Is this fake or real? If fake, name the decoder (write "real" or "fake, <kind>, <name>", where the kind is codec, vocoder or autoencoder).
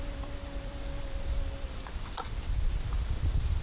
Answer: fake, vocoder, BigVGAN v2